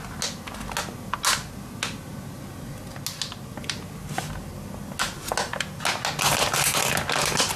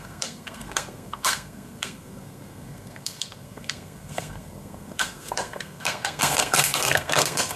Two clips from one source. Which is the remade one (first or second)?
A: second